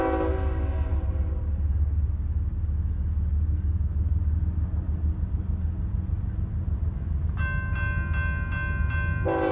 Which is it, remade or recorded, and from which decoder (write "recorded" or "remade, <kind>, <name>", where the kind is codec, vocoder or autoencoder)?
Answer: recorded